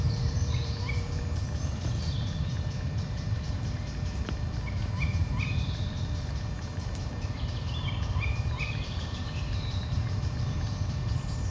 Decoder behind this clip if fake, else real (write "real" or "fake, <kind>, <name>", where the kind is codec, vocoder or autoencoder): fake, vocoder, BigVGAN v2